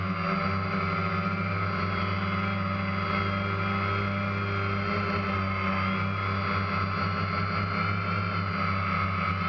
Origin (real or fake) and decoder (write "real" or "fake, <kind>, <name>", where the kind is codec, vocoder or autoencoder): real